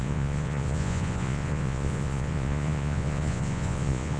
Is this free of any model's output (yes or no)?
no